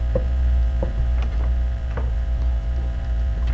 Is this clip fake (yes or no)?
yes